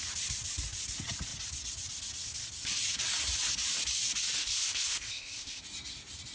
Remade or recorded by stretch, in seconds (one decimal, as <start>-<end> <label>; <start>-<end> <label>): 0.0-4.4 recorded; 4.4-5.6 remade; 5.6-6.3 recorded